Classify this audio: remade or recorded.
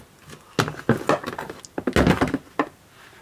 recorded